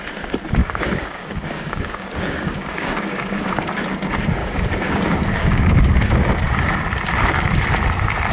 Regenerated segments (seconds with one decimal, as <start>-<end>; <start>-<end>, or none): 0.6-3.8; 4.4-6.0